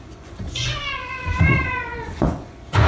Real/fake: fake